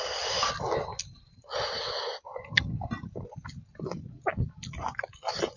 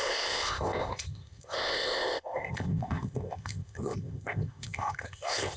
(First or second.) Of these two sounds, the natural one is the first